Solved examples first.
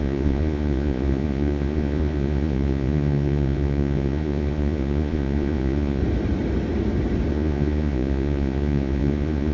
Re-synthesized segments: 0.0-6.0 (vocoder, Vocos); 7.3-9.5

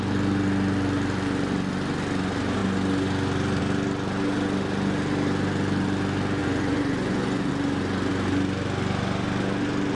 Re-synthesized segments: 6.4-7.5 (vocoder, Vocos)